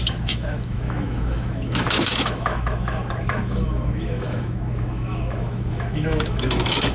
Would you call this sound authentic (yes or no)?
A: no